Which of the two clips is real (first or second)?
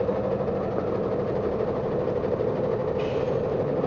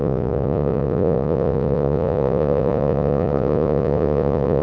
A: first